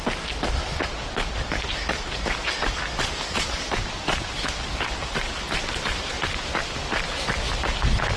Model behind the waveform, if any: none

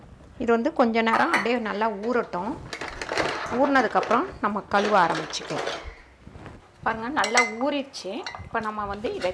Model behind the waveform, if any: none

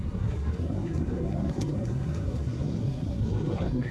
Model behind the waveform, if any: codec, SNAC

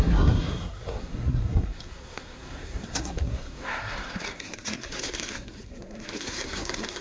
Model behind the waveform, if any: codec, SNAC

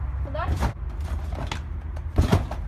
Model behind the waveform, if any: none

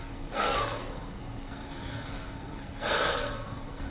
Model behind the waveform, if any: codec, SNAC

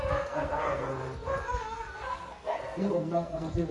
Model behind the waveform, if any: codec, SNAC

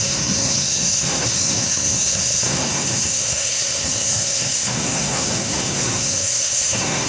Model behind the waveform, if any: codec, SNAC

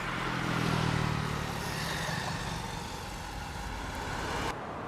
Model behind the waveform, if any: none